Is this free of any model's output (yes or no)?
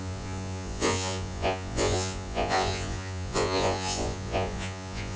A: no